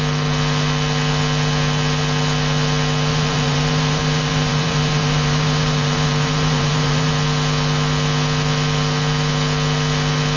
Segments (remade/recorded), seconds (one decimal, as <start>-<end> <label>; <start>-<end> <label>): 0.0-3.1 recorded; 3.1-7.1 remade; 7.1-10.4 recorded

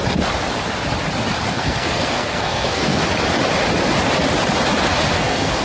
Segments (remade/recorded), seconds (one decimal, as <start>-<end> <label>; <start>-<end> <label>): 0.0-1.5 recorded; 1.5-3.0 remade; 3.0-5.1 recorded; 5.1-5.6 remade

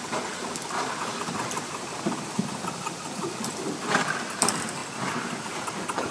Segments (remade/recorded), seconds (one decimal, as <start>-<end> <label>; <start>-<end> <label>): 0.0-6.1 recorded

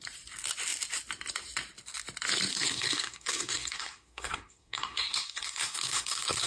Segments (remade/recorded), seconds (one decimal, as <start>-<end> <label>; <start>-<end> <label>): 0.0-2.5 recorded; 2.5-6.5 remade

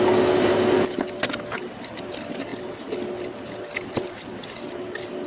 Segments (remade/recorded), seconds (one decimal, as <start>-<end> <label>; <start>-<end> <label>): 0.0-5.3 recorded

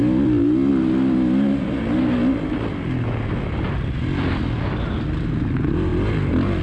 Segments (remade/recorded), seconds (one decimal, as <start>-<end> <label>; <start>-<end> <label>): 0.0-6.6 recorded